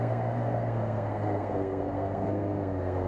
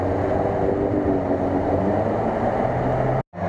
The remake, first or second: first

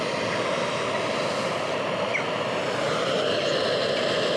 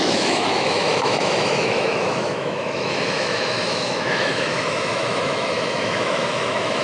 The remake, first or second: second